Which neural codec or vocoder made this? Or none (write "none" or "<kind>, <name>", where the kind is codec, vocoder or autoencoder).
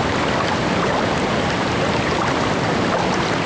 none